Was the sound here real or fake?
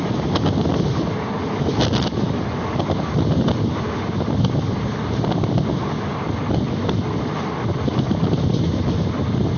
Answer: real